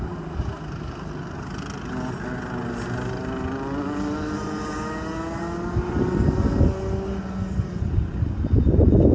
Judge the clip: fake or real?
real